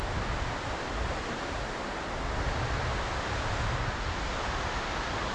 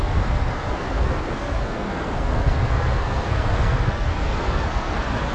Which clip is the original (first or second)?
first